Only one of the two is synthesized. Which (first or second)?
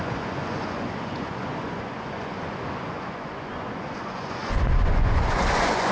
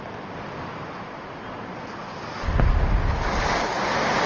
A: first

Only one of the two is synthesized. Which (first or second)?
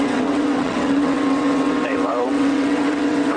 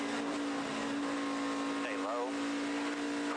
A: first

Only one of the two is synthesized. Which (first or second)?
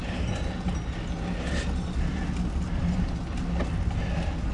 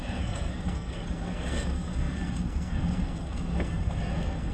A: second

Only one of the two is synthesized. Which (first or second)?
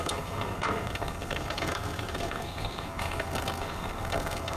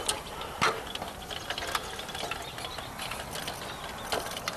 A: first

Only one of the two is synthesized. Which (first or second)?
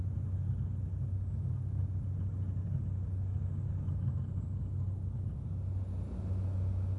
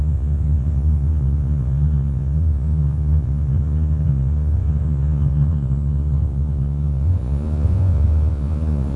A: second